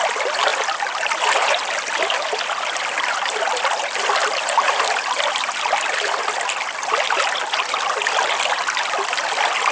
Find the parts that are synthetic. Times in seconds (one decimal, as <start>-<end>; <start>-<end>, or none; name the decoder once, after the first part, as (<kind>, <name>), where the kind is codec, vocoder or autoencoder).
none

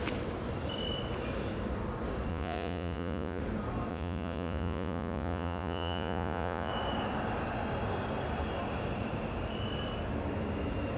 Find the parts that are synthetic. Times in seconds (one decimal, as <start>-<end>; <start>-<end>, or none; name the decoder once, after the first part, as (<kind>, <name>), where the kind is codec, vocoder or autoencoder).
2.3-3.4 (vocoder, Vocos); 3.9-6.7

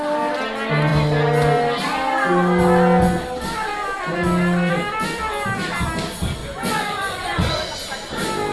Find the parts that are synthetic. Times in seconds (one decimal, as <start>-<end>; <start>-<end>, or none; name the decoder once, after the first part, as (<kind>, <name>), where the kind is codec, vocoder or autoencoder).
6.4-7.5 (vocoder, Vocos)

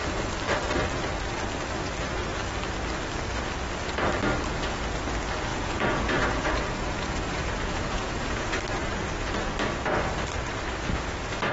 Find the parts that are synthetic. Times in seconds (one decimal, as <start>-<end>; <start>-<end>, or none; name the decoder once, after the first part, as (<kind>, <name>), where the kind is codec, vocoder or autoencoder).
5.5-8.6 (vocoder, Vocos)

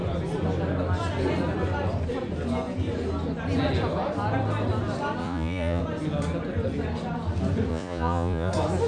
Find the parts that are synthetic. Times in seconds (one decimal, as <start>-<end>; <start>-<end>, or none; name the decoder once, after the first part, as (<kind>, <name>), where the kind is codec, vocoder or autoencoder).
5.2-5.8 (vocoder, Vocos); 7.7-8.5

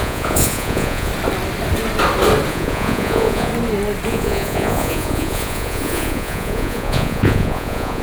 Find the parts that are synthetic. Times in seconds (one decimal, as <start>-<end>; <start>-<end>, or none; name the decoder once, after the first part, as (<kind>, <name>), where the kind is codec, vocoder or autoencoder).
0.0-1.1 (vocoder, Vocos); 2.5-3.5; 4.1-8.0